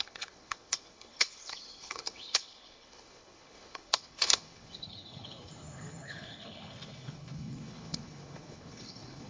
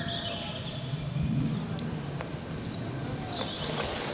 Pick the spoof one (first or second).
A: first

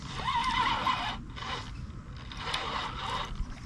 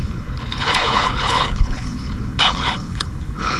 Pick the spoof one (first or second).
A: second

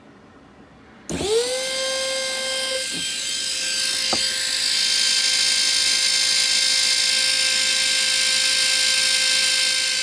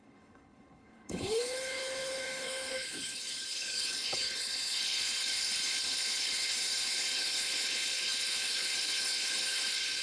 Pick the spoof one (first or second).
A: second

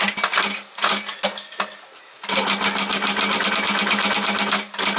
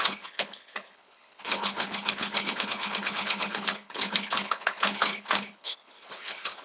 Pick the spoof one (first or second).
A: second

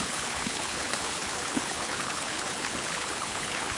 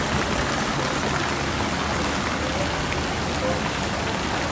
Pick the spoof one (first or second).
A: first